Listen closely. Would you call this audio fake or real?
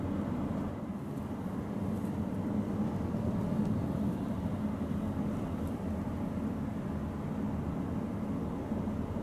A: real